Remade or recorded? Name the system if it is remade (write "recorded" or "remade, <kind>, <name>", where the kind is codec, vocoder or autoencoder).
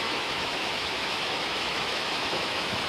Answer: remade, autoencoder, DAC-VAE